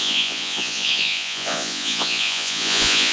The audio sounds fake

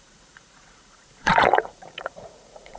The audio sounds fake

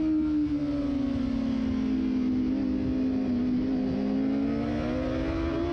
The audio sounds real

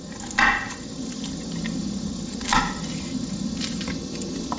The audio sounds real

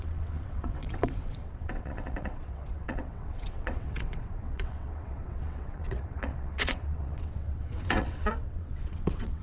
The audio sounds fake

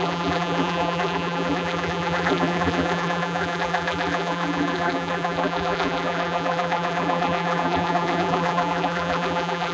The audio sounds fake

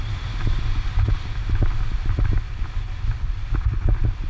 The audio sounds real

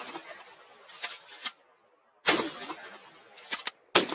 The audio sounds real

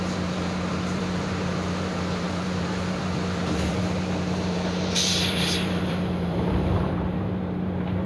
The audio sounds fake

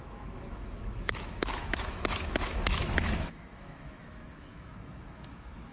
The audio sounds fake